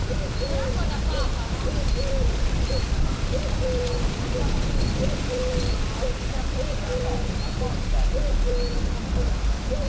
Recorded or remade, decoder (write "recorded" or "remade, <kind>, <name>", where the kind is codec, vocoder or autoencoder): remade, vocoder, BigVGAN v2